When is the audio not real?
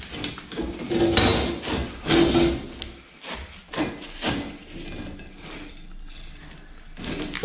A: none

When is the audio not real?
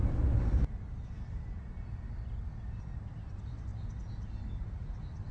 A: none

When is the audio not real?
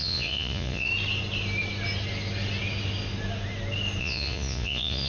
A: 0.0-0.9; 4.0-5.1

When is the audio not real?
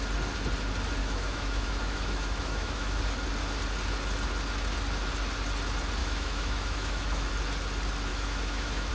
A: 1.0-3.0; 6.0-7.3; 8.1-8.9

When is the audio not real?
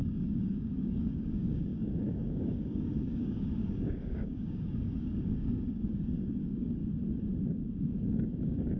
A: 0.0-6.8; 7.8-8.8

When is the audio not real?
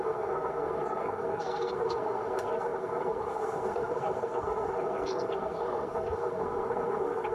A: 0.0-7.3